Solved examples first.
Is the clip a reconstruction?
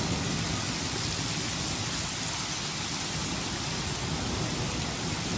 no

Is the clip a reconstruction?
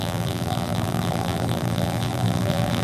yes